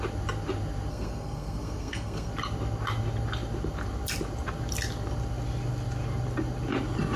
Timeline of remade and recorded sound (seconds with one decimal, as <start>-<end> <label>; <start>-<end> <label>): 0.0-0.9 recorded; 0.9-2.3 remade; 2.3-7.2 recorded